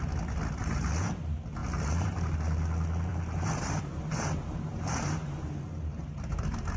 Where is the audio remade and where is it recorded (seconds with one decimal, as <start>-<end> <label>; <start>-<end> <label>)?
0.0-0.6 recorded; 0.6-1.1 remade; 1.1-1.6 recorded; 1.6-2.3 remade; 2.3-3.1 recorded; 3.1-6.8 remade